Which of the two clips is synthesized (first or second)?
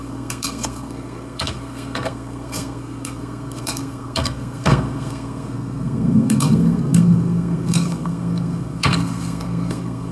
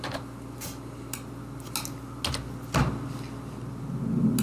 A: first